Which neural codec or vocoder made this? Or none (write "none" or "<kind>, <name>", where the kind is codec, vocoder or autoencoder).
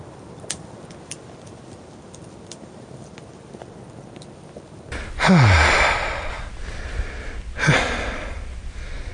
none